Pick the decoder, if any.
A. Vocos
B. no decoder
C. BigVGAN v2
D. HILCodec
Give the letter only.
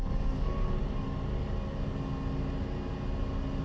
B